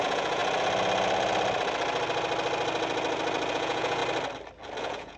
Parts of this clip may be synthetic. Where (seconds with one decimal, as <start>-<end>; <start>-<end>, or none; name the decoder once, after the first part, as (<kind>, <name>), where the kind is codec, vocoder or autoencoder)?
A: 0.0-0.4 (vocoder, Vocos); 3.5-4.0; 4.8-5.2